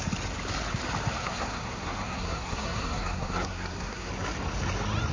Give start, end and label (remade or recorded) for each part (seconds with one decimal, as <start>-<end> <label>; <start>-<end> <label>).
0.0-1.2 recorded; 1.2-4.1 remade; 4.1-5.1 recorded